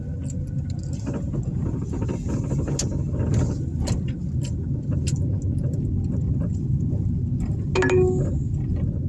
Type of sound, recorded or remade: recorded